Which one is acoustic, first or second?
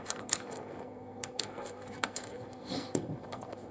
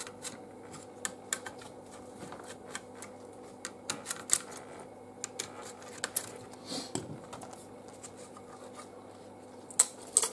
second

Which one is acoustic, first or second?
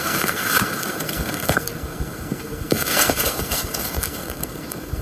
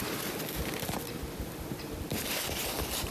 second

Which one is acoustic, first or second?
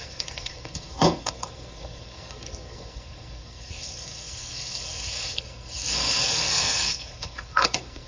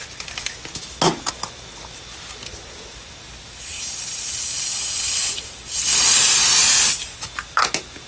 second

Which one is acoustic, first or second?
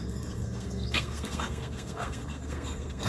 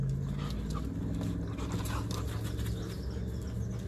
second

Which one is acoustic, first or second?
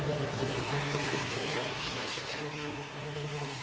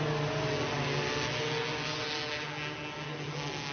second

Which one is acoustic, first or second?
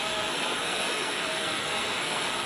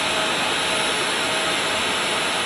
second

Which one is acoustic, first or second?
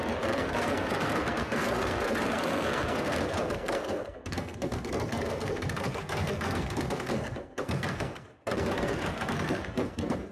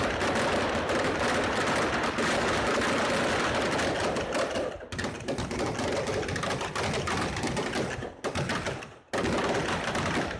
second